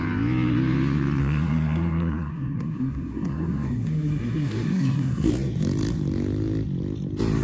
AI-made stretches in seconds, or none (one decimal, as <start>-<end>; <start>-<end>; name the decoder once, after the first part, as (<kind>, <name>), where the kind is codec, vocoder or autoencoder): 1.2-5.3 (codec, SNAC)